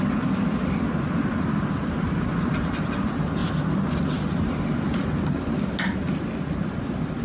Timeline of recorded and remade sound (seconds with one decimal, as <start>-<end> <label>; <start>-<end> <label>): 0.0-7.2 recorded